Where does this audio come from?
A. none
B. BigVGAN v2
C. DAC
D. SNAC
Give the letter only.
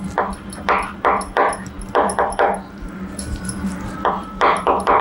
B